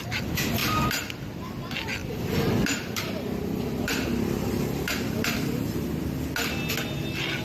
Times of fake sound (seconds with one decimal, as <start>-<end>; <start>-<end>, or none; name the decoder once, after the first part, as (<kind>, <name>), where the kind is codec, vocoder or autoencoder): 0.6-1.1 (vocoder, BigVGAN v2); 2.0-5.7